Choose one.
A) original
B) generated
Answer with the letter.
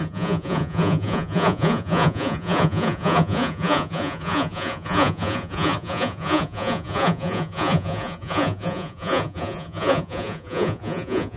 B